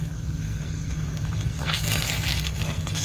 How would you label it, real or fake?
fake